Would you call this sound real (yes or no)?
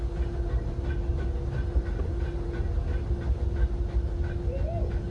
yes